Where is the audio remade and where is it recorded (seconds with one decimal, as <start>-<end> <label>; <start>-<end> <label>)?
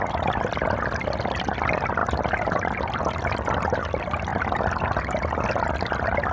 0.0-6.3 recorded